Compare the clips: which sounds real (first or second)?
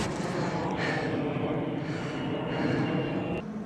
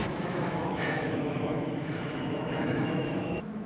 first